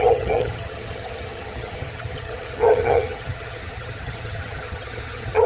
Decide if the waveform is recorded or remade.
remade